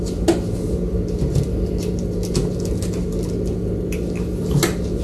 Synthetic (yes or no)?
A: no